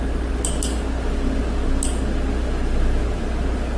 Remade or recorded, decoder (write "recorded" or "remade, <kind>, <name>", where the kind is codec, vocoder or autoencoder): recorded